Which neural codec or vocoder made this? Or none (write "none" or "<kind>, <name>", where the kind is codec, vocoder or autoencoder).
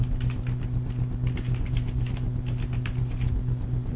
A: none